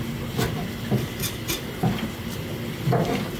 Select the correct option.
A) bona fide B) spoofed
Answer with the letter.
A